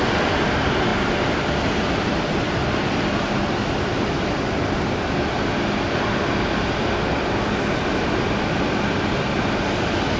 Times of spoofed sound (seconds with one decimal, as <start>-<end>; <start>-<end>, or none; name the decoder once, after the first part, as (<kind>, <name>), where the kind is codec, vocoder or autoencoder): none